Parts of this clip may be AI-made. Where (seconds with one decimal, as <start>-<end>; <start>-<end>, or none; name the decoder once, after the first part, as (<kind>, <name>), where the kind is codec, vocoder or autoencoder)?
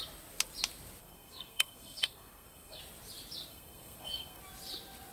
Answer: 1.0-2.8 (codec, SNAC); 3.5-4.4